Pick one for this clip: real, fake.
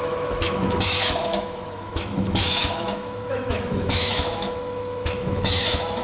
fake